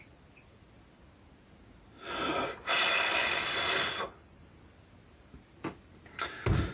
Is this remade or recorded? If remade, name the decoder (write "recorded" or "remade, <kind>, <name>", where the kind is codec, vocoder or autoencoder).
recorded